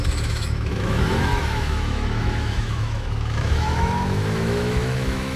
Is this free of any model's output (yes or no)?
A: no